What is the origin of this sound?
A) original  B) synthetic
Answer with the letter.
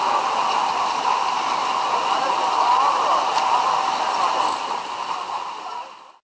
A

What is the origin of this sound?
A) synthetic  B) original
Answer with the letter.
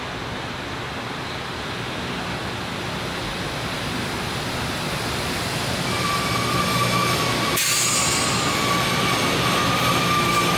B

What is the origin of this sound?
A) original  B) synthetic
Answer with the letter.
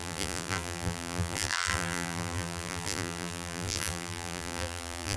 B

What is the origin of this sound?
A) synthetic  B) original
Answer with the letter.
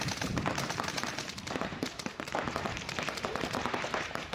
A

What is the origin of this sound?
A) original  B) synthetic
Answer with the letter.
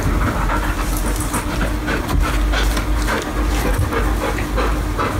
A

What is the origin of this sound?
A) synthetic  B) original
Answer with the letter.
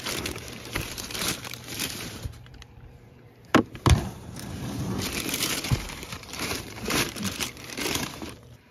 A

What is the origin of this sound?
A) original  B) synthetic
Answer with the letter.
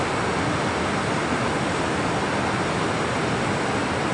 A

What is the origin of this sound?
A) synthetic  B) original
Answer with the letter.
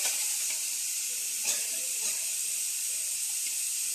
A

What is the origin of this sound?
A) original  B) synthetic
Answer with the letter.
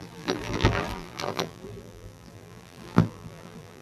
B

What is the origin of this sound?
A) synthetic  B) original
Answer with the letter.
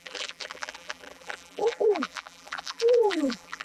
A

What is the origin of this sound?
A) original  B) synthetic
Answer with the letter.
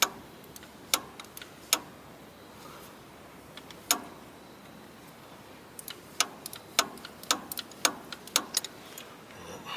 A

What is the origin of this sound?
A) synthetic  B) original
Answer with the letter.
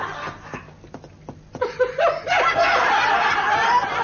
B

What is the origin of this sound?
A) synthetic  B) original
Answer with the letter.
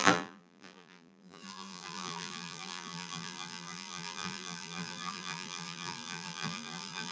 A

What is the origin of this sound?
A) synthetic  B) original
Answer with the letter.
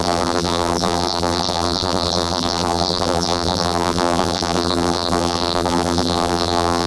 A